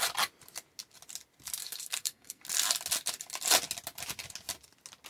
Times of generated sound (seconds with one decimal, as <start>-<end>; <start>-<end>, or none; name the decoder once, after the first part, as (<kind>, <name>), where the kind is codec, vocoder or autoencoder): 1.6-2.4 (codec, SNAC)